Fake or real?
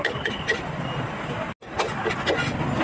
real